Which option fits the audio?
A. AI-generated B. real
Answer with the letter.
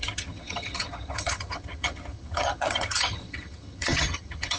A